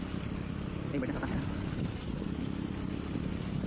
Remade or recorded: recorded